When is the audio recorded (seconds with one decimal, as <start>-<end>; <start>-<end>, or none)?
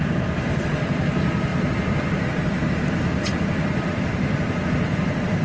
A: 0.0-1.5; 4.7-5.4